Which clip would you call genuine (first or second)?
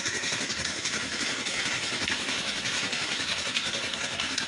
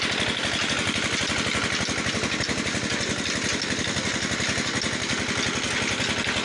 second